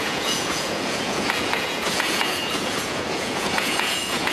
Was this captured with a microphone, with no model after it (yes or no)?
no